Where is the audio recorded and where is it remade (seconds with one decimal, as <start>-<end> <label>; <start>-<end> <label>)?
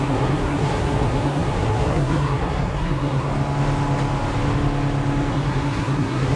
0.0-3.3 remade; 3.3-5.3 recorded; 5.3-6.4 remade